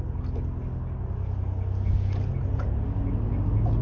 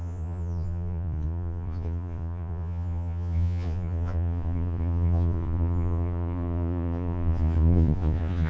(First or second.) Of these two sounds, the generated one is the second